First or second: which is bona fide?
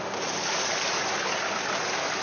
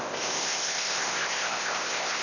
first